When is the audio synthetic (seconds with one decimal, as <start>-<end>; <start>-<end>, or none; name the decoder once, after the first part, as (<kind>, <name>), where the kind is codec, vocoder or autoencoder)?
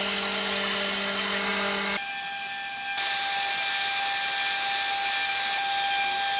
none